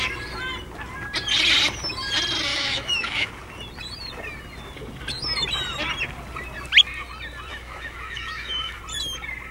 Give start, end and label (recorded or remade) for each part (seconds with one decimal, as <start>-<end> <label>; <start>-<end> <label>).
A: 0.0-2.5 recorded; 2.5-3.3 remade; 3.3-7.5 recorded; 7.5-8.8 remade; 8.8-9.5 recorded